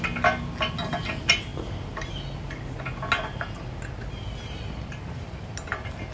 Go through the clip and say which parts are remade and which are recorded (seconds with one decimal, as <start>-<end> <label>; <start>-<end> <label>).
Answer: 0.0-6.1 recorded